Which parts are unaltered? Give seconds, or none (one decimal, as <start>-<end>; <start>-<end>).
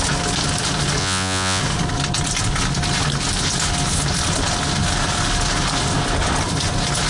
0.0-1.0; 1.6-7.1